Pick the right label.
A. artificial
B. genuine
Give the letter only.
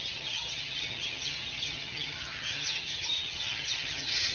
A